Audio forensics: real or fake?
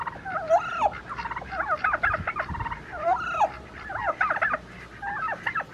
real